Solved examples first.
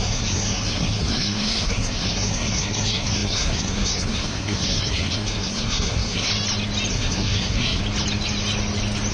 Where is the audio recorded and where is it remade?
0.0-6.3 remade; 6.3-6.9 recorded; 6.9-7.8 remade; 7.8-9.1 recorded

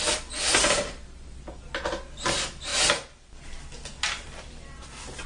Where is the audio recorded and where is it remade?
0.0-5.3 recorded